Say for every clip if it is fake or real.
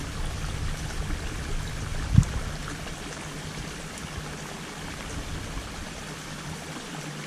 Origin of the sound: real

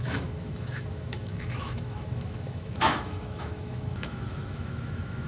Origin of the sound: fake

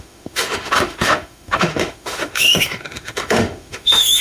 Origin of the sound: fake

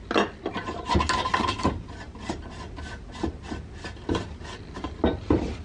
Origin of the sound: real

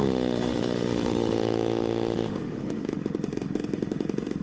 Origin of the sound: fake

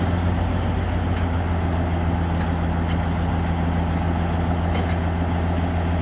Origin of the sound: real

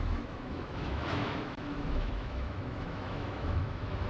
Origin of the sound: fake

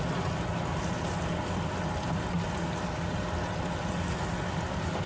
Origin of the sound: real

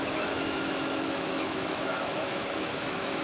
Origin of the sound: fake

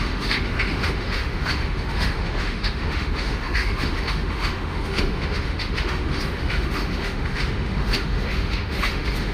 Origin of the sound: fake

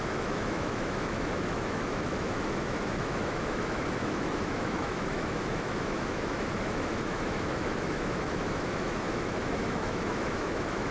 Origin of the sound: fake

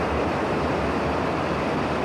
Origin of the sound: real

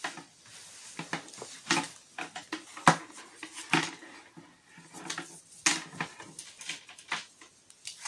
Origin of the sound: real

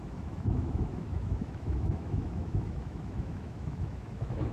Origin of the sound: fake